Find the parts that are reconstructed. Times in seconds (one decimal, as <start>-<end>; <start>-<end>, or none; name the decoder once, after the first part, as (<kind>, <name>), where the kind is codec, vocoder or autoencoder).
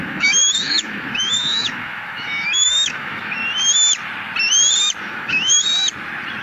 0.0-3.4 (autoencoder, DAC-VAE); 5.0-5.6